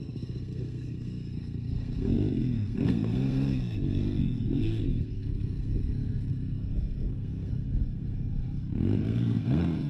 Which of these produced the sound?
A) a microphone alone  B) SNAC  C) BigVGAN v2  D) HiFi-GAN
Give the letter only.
B